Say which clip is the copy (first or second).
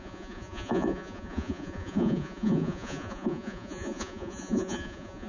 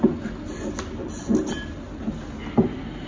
first